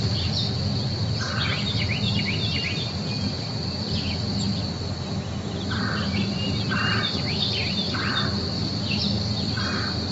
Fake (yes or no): no